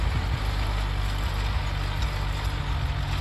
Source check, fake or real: real